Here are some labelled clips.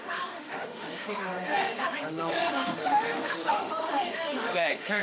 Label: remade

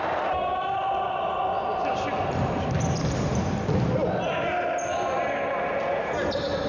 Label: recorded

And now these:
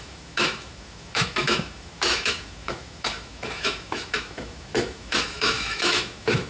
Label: remade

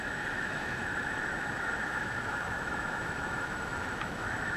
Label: remade